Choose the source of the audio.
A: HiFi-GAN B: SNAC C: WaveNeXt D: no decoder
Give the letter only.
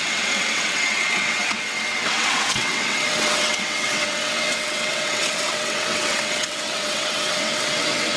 C